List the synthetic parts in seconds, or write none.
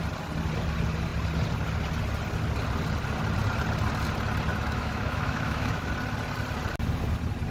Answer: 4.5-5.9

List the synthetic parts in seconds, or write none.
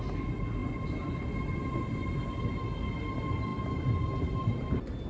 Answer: none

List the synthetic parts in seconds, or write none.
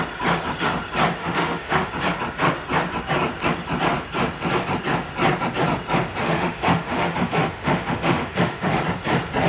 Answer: 1.2-1.9; 6.2-8.7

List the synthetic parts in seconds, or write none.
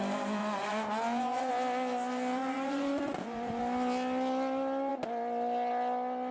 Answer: 0.4-1.5; 2.4-3.6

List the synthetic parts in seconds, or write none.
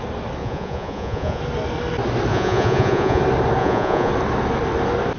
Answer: 0.4-1.4; 2.3-3.2; 3.6-4.1